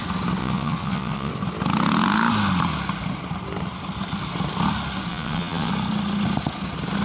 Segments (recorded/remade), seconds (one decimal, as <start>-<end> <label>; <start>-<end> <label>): 0.0-0.4 recorded; 0.4-1.3 remade; 1.3-5.1 recorded; 5.1-5.7 remade; 5.7-7.0 recorded